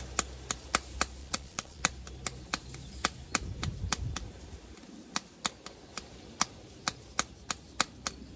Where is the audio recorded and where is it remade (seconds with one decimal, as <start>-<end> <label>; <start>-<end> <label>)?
0.0-1.2 recorded; 1.2-1.9 remade; 1.9-8.4 recorded